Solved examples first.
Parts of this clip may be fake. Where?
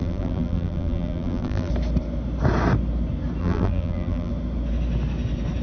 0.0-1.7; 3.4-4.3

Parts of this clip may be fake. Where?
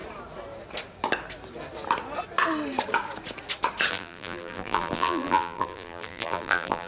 3.9-6.9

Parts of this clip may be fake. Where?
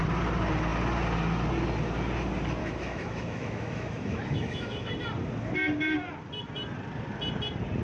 2.6-4.9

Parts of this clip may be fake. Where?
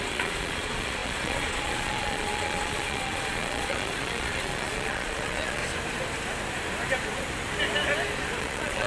0.0-5.6; 8.4-8.9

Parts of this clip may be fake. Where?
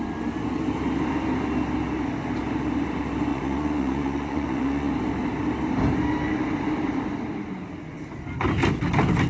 3.3-4.9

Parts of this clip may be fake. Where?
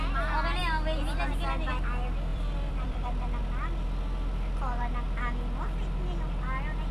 2.3-3.4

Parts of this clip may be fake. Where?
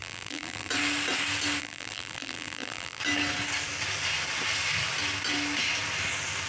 0.0-0.7; 1.6-3.0